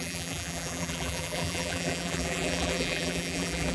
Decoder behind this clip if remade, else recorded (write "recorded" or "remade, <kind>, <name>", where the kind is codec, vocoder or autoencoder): remade, vocoder, BigVGAN v2